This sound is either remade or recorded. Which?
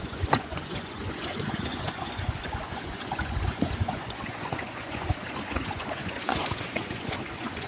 remade